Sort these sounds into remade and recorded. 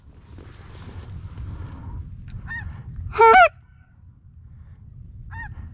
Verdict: recorded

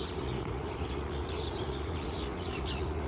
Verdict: remade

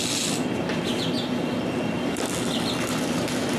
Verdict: recorded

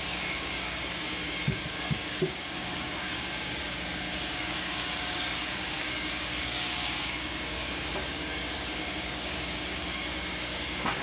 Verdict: remade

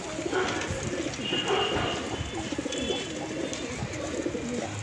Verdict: recorded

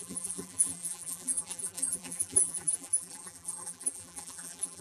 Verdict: remade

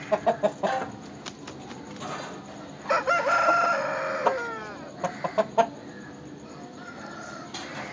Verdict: recorded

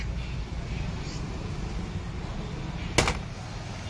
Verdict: recorded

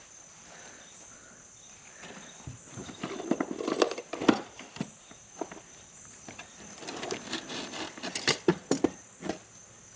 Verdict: recorded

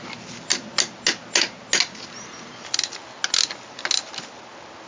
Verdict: recorded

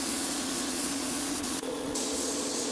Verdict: remade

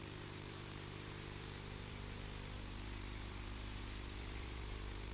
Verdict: remade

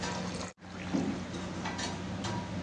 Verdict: recorded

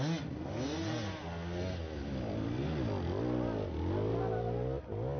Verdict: recorded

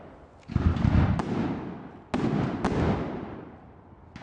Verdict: recorded